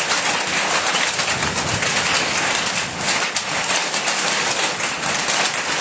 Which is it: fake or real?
real